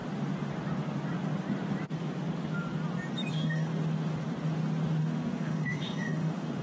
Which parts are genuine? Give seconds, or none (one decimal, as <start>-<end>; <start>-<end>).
0.0-3.3; 3.7-5.0